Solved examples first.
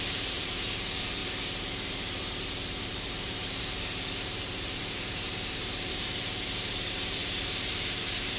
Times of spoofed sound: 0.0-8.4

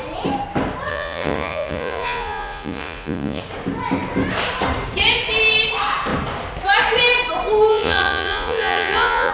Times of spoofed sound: 0.9-3.4; 7.7-9.3

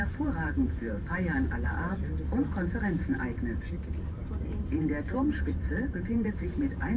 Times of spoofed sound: 0.0-2.0; 4.4-7.0

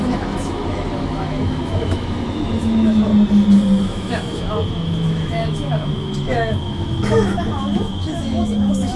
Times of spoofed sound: 0.0-3.1; 3.8-9.0

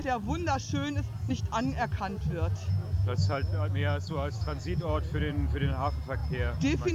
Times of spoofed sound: 2.8-4.8

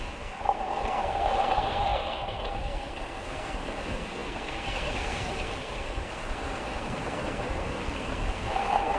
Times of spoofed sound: 0.0-9.0